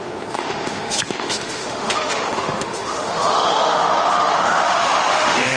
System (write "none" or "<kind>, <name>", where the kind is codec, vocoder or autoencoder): autoencoder, DAC-VAE